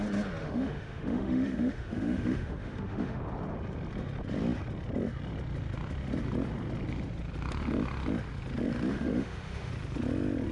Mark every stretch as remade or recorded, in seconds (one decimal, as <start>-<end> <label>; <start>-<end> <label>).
0.0-0.4 recorded; 0.4-3.2 remade; 3.2-8.9 recorded; 8.9-9.7 remade; 9.7-10.5 recorded